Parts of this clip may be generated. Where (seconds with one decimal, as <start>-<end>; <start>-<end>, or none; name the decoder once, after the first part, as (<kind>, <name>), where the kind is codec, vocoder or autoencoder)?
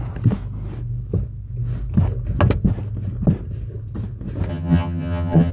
4.5-5.5 (vocoder, HiFi-GAN)